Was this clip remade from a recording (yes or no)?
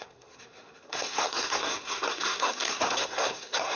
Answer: yes